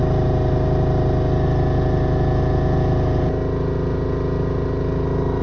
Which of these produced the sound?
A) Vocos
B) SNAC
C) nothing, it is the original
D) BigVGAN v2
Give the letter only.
C